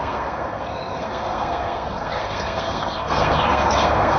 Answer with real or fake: fake